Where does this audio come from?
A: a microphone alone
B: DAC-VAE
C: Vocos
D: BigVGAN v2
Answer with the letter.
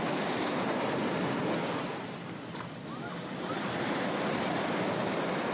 D